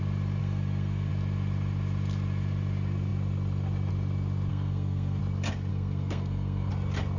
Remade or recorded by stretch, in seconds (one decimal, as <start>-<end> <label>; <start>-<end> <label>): 0.0-0.4 recorded; 0.4-1.1 remade; 1.1-4.5 recorded; 4.5-5.2 remade; 5.2-5.7 recorded; 5.7-6.7 remade; 6.7-7.2 recorded